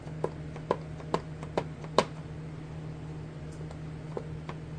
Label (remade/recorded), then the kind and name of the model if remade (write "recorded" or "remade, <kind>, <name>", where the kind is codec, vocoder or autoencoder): recorded